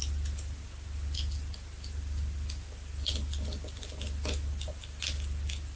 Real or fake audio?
real